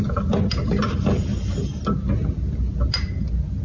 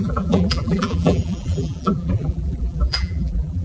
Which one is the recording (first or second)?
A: first